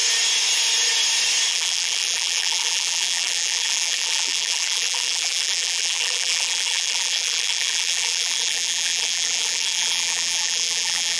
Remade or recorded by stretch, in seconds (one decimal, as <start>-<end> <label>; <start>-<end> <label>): 0.0-1.5 recorded; 1.5-11.2 remade